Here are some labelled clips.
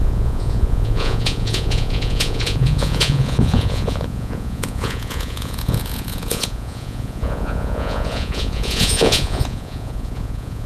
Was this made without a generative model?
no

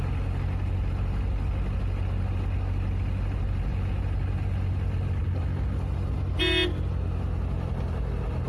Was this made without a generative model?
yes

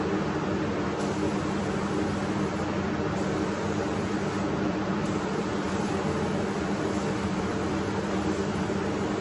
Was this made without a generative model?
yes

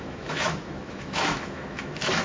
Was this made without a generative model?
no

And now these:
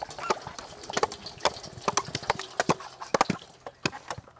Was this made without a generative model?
yes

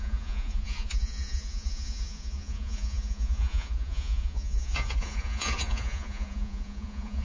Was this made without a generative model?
no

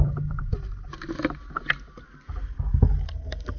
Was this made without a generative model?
yes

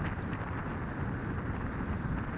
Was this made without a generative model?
yes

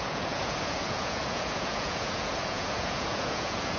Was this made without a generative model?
no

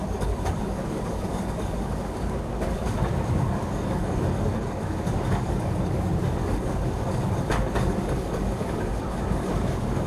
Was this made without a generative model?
no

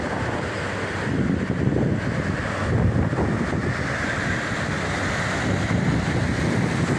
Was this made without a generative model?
yes